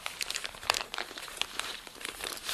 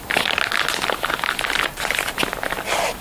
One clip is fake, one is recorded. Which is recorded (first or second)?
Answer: second